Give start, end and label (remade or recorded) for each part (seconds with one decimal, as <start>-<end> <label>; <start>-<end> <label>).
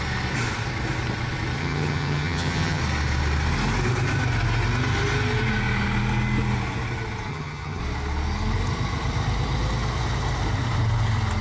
0.0-1.6 recorded; 1.6-2.8 remade; 2.8-7.3 recorded; 7.3-7.8 remade; 7.8-11.4 recorded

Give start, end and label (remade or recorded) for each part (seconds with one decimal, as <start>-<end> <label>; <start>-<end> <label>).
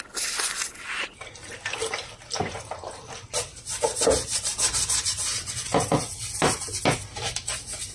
0.0-7.9 recorded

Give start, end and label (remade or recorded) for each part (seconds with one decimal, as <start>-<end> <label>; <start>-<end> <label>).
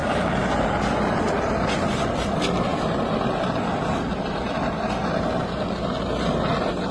0.0-0.7 recorded; 0.7-5.0 remade; 5.0-6.0 recorded; 6.0-6.9 remade